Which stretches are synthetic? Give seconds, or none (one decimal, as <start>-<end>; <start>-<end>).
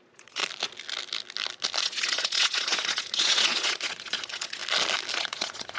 0.0-0.4; 1.8-4.6; 5.1-5.8